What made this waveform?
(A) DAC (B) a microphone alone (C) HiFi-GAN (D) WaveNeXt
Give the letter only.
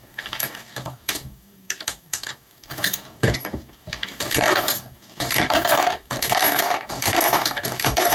A